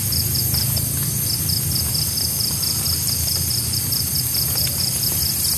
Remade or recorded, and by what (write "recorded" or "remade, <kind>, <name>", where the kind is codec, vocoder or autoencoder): recorded